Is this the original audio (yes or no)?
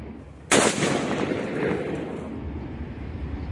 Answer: yes